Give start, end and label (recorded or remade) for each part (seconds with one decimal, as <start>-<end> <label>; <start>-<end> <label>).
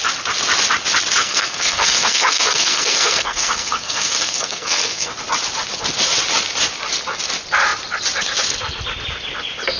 0.0-1.2 recorded; 1.2-5.1 remade; 5.1-9.8 recorded